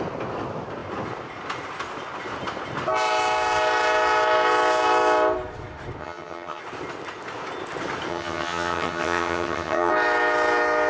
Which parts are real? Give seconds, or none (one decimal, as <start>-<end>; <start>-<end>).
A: 0.0-6.0; 6.6-8.1; 9.9-10.9